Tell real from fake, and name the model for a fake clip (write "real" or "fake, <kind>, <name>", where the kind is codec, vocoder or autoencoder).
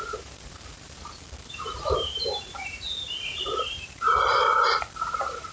fake, vocoder, BigVGAN v2